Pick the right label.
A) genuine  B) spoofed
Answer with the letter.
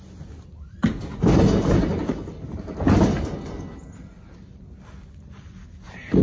A